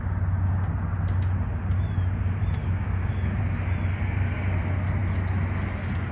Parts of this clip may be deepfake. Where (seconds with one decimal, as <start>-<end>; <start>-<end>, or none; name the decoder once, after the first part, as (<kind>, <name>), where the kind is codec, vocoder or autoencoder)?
2.6-3.4 (codec, DAC)